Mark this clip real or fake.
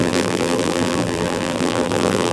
fake